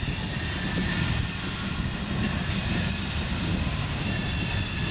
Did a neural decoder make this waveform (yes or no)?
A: no